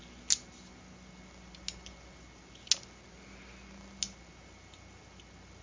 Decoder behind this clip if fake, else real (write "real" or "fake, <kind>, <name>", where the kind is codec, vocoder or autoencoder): real